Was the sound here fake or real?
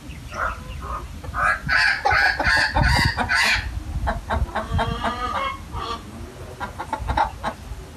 real